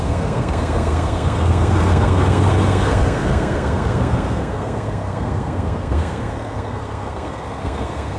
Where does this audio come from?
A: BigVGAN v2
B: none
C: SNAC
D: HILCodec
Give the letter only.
C